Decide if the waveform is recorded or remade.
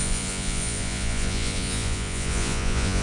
remade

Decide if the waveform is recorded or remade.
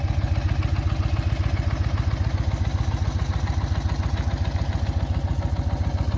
recorded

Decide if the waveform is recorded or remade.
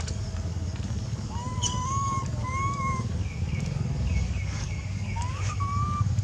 remade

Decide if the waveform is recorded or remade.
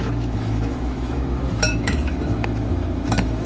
remade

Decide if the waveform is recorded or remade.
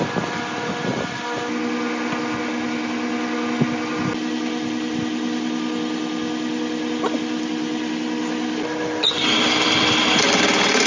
recorded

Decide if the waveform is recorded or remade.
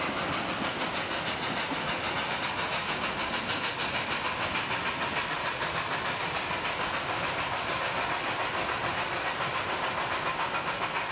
recorded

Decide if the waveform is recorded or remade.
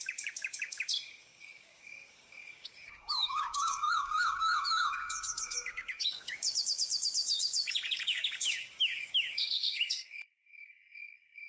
remade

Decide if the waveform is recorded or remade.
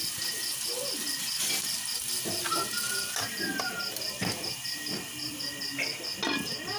recorded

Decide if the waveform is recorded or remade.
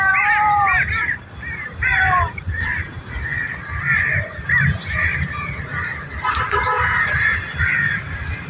remade